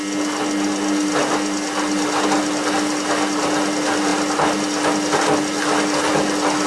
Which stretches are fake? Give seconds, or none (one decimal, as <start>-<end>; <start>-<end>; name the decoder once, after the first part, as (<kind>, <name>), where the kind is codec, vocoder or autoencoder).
none